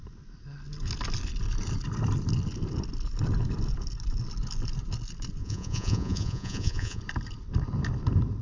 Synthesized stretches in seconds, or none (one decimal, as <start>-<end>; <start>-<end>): 5.4-7.0